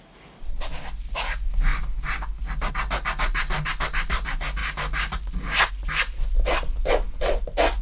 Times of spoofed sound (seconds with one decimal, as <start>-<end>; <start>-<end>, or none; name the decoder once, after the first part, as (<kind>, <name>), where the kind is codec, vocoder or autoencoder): none